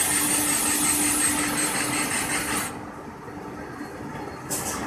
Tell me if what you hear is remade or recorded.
recorded